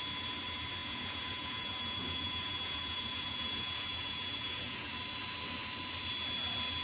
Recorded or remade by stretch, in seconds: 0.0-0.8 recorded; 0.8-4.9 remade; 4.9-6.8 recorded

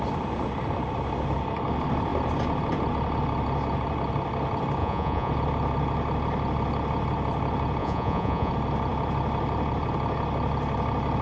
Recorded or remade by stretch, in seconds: 0.0-4.8 recorded; 4.8-5.3 remade; 5.3-7.8 recorded; 7.8-8.5 remade; 8.5-11.2 recorded

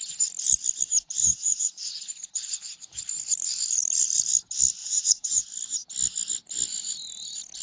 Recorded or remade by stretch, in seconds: 0.0-1.2 recorded; 1.2-3.0 remade; 3.0-4.8 recorded; 4.8-5.4 remade; 5.4-7.6 recorded

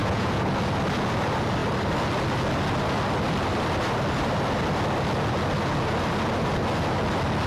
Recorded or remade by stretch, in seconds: 0.0-0.5 remade; 0.5-7.5 recorded